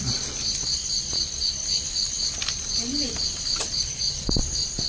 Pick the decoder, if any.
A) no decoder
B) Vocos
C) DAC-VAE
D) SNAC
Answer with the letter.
A